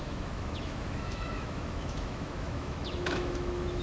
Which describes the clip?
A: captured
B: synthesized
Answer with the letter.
B